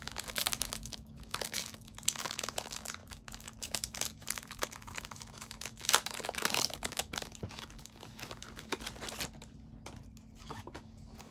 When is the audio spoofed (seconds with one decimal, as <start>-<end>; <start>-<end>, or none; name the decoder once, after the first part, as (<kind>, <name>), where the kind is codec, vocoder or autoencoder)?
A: 0.0-8.7 (codec, DAC); 10.4-11.3